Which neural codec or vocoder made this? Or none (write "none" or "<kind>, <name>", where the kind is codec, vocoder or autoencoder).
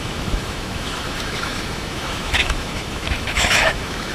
autoencoder, DAC-VAE